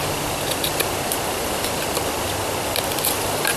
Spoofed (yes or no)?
no